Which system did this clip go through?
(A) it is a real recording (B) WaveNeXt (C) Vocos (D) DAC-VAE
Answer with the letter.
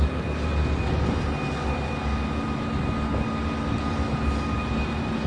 A